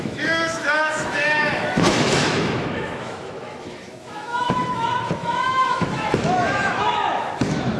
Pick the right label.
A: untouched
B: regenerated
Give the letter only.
B